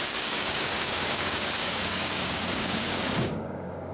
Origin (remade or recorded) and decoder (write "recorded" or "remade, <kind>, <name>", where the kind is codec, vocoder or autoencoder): remade, codec, DAC